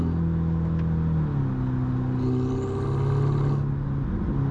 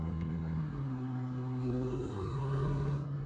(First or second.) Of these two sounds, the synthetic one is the second